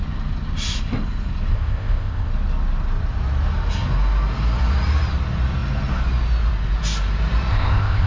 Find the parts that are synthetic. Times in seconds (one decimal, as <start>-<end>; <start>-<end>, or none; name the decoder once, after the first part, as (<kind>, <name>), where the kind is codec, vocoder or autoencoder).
1.5-2.3 (codec, ZipCodec); 7.5-8.1